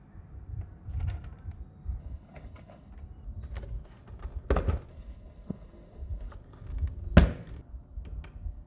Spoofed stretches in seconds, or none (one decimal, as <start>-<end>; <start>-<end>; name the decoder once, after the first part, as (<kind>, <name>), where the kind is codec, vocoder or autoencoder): 2.0-2.9 (codec, HILCodec); 4.9-6.3